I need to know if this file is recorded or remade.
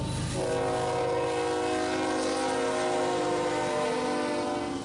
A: recorded